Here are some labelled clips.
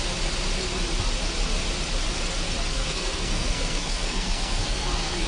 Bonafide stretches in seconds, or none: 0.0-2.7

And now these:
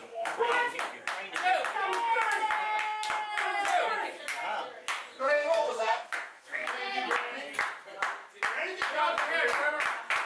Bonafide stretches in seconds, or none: 0.7-5.1; 6.7-10.3